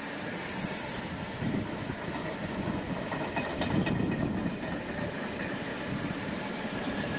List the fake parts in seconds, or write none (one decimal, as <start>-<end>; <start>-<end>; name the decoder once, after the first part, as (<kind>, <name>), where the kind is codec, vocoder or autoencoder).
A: 2.2-2.9 (vocoder, Vocos)